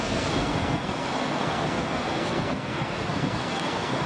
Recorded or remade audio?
remade